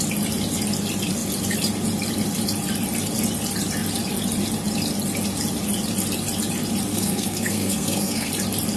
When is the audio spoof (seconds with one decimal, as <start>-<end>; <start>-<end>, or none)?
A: 6.9-8.3